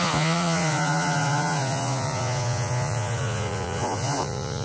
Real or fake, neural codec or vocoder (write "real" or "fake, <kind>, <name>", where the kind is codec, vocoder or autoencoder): fake, vocoder, Vocos